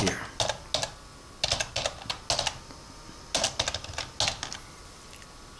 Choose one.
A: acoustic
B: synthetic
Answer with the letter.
A